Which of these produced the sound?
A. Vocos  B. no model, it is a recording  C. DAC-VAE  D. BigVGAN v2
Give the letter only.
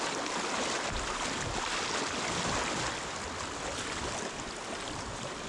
B